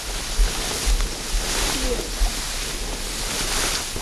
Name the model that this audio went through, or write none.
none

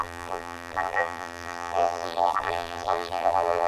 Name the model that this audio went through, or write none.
vocoder, BigVGAN v2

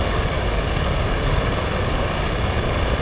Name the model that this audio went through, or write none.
codec, DAC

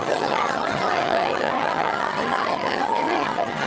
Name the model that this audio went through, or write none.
vocoder, HiFi-GAN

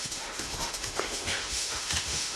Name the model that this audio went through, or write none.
autoencoder, DAC-VAE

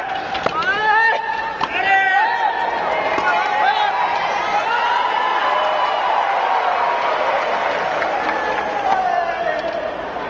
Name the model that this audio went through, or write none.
none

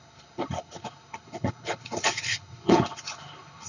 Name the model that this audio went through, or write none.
codec, HILCodec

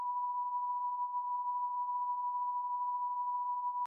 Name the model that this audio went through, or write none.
none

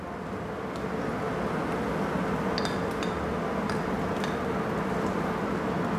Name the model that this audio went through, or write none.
none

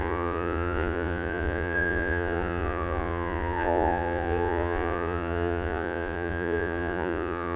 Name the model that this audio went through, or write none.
vocoder, Vocos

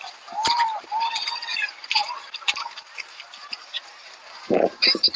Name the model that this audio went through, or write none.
vocoder, BigVGAN v2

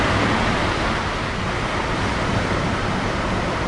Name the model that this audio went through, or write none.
none